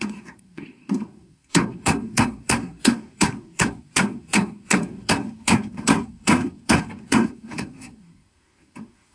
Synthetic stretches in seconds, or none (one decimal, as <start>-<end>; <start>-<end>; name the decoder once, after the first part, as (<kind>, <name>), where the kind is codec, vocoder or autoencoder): 0.0-9.1 (codec, SNAC)